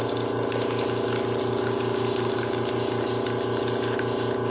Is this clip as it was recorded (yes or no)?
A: yes